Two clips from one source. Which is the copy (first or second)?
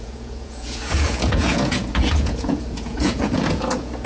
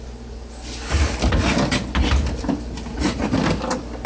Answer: first